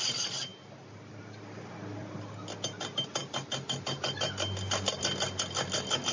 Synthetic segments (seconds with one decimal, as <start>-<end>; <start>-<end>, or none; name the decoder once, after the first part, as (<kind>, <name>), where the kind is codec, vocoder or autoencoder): none